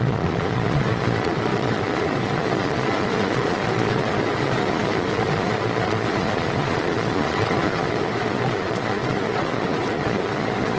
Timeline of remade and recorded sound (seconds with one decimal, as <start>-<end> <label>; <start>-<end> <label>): 0.0-10.8 remade